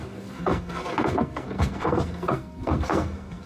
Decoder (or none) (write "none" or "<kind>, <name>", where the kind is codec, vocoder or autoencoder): codec, SNAC